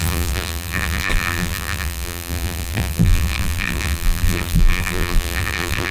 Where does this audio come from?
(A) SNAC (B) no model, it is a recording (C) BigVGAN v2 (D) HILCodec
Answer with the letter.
C